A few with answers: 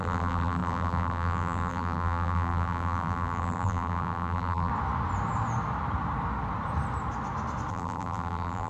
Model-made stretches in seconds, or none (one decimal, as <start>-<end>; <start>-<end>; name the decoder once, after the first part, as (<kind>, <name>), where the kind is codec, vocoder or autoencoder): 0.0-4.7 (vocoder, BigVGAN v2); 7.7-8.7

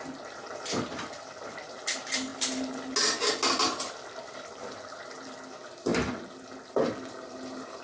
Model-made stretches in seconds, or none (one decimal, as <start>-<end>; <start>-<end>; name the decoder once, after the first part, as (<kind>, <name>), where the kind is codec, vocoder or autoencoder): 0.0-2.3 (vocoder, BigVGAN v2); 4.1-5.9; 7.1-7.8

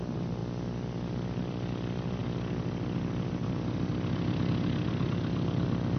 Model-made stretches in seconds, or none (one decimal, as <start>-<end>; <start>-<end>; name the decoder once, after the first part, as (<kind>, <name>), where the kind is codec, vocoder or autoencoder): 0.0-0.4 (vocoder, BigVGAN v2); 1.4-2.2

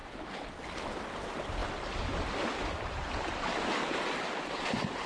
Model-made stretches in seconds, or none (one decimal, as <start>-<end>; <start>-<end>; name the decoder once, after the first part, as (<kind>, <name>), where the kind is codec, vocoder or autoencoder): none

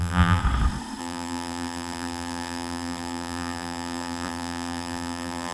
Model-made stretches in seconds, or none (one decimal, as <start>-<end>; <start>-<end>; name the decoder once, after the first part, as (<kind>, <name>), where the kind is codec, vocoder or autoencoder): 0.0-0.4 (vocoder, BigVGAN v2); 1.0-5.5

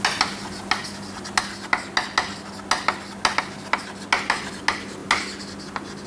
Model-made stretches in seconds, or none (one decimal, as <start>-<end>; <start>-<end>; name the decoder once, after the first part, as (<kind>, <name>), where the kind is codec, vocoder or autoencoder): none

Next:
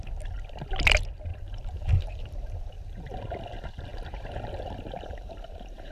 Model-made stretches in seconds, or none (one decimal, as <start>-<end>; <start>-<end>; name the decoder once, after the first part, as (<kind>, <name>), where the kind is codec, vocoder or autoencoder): 1.3-3.2 (vocoder, BigVGAN v2); 3.9-5.9